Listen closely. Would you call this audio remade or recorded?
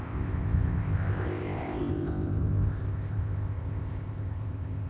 remade